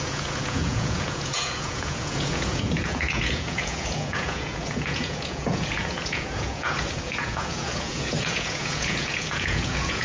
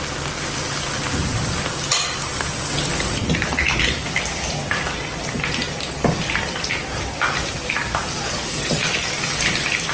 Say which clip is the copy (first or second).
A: first